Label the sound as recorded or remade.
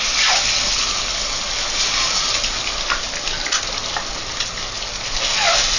recorded